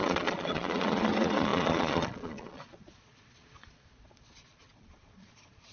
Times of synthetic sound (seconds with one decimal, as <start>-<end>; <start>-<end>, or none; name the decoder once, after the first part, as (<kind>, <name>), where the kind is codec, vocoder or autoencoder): 0.0-5.7 (vocoder, Vocos)